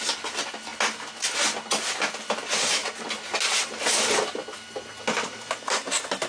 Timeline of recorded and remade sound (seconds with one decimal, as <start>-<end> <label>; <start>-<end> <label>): 0.0-6.3 recorded